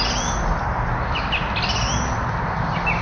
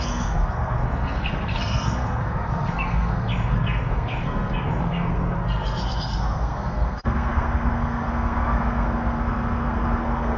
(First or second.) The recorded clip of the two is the first